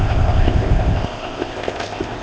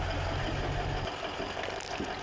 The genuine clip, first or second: second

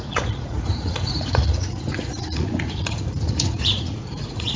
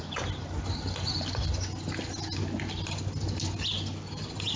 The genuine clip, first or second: second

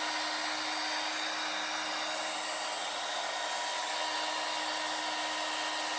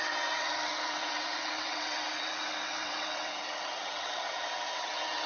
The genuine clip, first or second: first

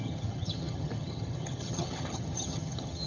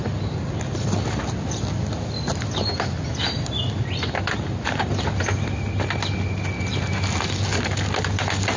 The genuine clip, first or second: second